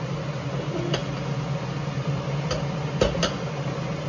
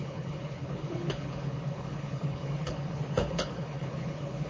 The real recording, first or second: first